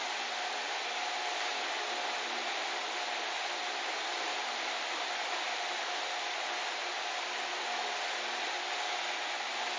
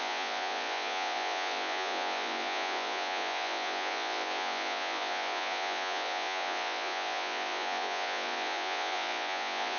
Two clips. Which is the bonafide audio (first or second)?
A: first